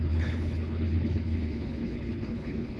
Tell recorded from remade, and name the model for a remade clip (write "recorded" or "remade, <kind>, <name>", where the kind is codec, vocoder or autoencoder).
remade, codec, HILCodec